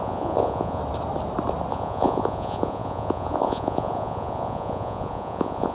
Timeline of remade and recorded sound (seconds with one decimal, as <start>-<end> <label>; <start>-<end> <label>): 0.0-0.8 remade; 0.8-1.7 recorded; 1.7-5.7 remade